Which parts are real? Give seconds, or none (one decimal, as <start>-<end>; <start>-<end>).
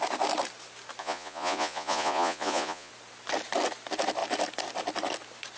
0.0-1.0; 2.9-5.6